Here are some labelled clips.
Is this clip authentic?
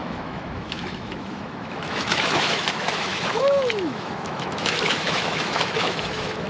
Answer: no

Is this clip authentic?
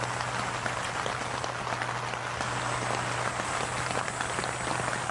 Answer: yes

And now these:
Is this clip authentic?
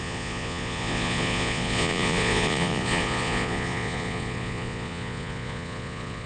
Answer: no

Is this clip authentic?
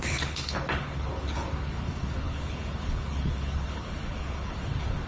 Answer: no